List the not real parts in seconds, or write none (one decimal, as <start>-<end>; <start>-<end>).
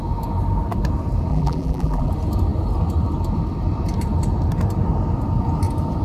1.3-2.1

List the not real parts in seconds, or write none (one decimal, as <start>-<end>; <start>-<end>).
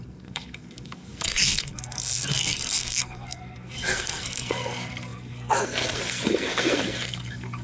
0.0-7.6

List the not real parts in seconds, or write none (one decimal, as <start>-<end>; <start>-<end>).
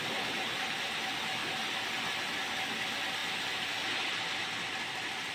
none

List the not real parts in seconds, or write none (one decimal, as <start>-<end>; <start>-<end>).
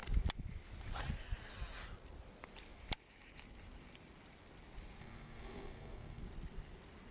5.0-6.2